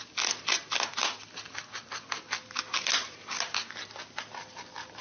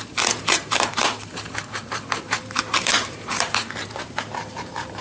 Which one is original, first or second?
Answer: first